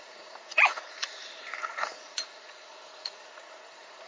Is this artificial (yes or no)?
yes